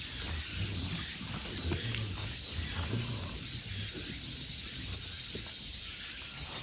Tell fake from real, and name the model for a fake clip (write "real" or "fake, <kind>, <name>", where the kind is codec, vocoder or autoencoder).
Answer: real